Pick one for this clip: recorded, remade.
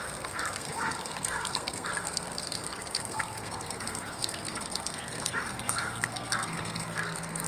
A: remade